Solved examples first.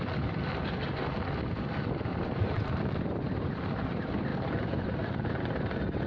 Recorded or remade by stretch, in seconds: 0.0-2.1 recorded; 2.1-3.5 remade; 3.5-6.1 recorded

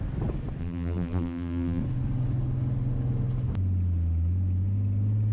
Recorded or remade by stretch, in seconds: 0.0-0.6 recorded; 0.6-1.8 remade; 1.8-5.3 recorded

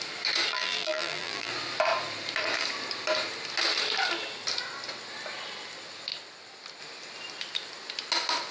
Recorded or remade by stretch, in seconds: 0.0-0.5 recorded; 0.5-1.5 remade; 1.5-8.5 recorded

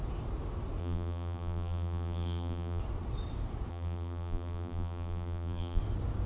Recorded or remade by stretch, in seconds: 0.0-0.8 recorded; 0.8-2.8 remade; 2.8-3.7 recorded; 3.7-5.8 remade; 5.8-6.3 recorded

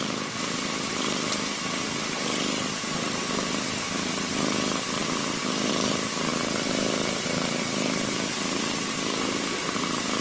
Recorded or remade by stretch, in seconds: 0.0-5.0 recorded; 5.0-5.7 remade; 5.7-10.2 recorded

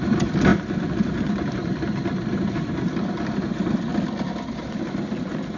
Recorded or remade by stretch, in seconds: 0.0-3.9 remade; 3.9-4.6 recorded; 4.6-5.6 remade

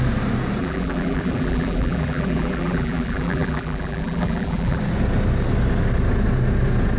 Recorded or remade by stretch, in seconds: 0.0-0.6 recorded; 0.6-4.8 remade; 4.8-7.0 recorded

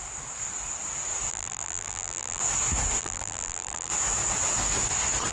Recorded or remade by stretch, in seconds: 0.0-1.3 recorded; 1.3-2.4 remade; 2.4-3.0 recorded; 3.0-3.9 remade; 3.9-5.3 recorded